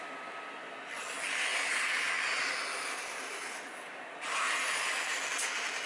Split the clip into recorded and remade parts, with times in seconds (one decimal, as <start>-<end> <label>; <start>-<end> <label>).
0.0-1.5 recorded; 1.5-2.1 remade; 2.1-5.9 recorded